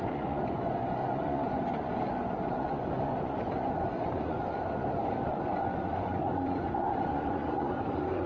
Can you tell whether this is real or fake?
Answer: fake